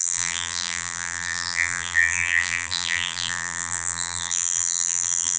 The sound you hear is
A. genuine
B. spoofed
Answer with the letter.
B